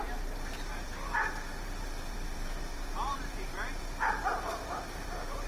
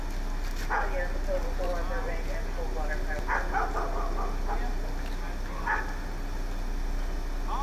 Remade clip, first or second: first